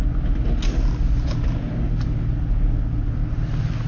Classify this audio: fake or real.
real